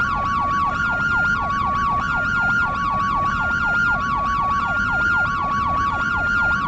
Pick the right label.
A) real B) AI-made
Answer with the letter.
A